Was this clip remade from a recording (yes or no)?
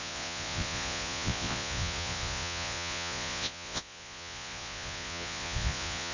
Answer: yes